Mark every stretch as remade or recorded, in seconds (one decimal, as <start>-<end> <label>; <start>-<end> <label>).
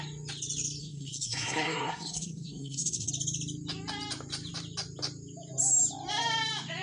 0.0-0.8 recorded; 0.8-3.1 remade; 3.1-6.8 recorded